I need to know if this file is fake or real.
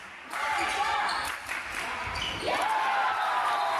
real